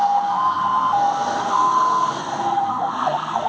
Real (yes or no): no